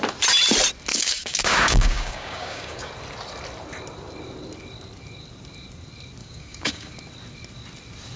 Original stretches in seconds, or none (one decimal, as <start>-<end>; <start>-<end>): 0.0-0.9; 2.9-6.2; 7.0-8.2